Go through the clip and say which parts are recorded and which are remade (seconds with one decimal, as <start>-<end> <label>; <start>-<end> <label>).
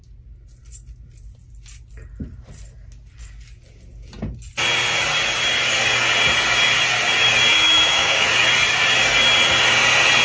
0.0-7.5 recorded; 7.5-8.3 remade; 8.3-10.2 recorded